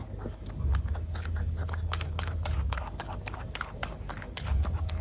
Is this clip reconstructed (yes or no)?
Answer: yes